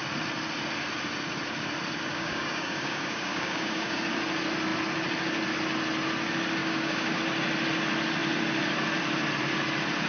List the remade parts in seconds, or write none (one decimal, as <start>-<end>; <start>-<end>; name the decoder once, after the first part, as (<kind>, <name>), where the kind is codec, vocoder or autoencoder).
2.1-4.0 (codec, DAC); 6.6-7.2